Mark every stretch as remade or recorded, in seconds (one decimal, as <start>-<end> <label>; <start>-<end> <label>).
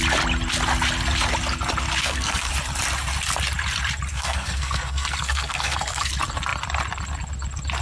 0.0-2.0 recorded; 2.0-2.5 remade; 2.5-4.1 recorded; 4.1-6.1 remade; 6.1-7.8 recorded